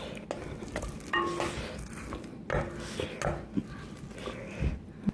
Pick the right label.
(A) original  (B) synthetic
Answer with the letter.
A